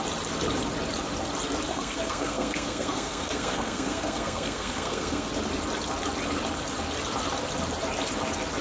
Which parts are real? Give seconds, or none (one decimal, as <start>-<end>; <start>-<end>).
0.0-1.7; 5.3-8.6

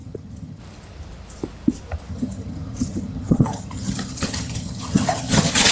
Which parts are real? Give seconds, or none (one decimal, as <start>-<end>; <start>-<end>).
0.6-2.1

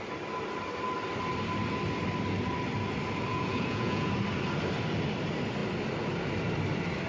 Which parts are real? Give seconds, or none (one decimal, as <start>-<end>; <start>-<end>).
0.0-3.3; 4.1-7.1